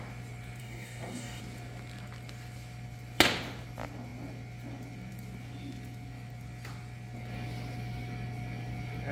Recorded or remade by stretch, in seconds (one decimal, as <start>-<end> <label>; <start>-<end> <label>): 0.0-0.6 recorded; 0.6-1.4 remade; 1.4-9.1 recorded